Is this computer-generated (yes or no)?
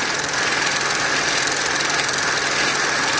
no